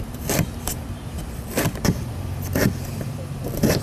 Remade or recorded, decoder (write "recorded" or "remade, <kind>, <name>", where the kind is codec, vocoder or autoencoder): remade, vocoder, BigVGAN v2